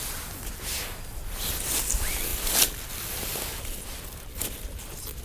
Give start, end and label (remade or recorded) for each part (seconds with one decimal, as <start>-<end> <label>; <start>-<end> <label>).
0.0-5.2 recorded